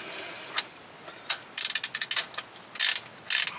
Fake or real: real